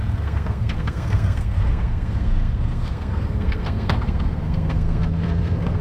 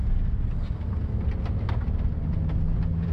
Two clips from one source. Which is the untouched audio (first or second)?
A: second